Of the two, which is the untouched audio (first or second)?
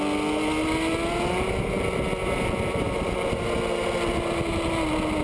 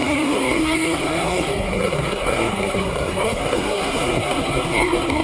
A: first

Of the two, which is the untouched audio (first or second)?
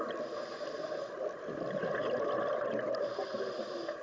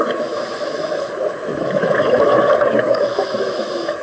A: first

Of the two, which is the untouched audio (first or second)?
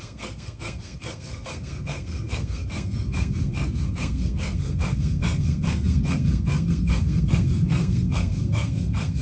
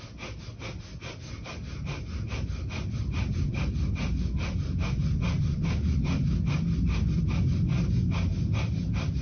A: second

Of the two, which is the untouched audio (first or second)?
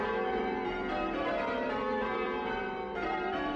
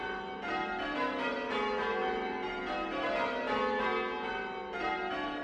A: second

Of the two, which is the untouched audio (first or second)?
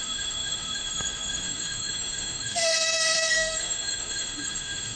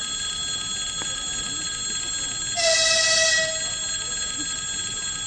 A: second